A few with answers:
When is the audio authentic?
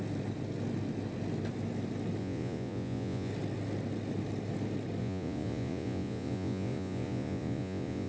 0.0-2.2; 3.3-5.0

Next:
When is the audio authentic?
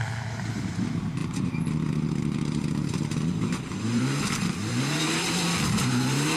0.0-1.2; 4.8-6.4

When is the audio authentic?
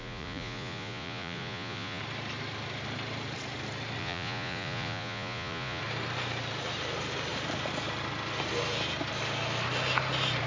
2.0-4.0; 5.8-10.5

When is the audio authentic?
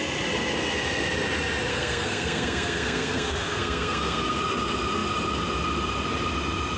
0.0-1.7; 4.4-6.8